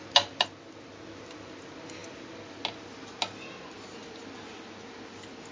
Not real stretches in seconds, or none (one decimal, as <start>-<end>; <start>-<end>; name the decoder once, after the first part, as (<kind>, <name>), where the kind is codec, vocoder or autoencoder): none